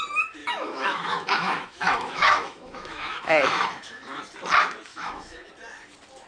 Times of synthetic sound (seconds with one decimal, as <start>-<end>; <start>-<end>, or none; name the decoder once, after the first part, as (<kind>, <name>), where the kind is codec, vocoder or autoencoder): 0.4-4.2 (autoencoder, DAC-VAE); 4.9-5.5